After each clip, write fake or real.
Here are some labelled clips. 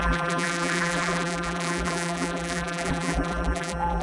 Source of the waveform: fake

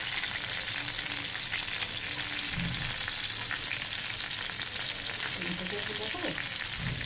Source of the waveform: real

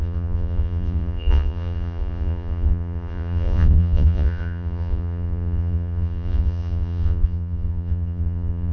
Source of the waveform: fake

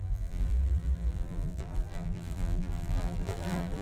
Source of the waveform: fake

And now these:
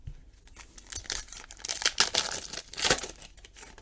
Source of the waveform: real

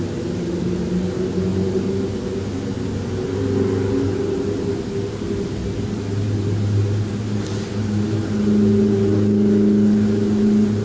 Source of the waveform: real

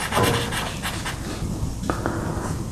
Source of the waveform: real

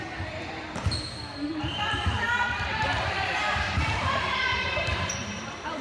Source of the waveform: fake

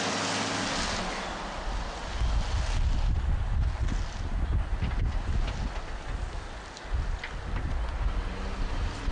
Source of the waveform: real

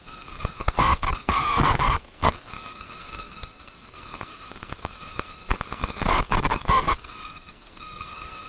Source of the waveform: fake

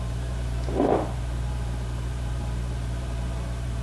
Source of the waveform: fake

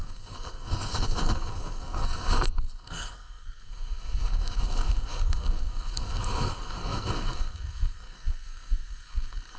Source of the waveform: fake